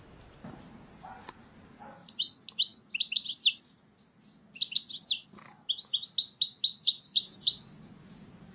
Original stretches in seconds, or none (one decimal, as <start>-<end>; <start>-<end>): 0.0-8.5